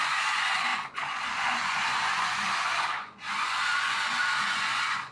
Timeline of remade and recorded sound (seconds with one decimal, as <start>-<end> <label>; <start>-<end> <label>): 0.0-5.1 remade

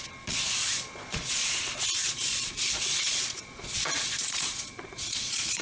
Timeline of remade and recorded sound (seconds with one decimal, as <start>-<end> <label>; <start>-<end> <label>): 0.0-5.6 remade